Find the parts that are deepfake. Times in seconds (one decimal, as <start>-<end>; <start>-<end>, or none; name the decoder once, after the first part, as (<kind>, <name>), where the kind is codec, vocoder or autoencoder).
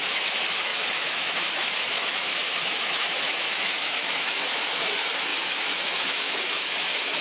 0.0-7.2 (autoencoder, DAC-VAE)